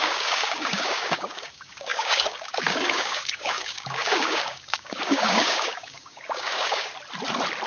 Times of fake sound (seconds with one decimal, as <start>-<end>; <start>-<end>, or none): 0.0-6.9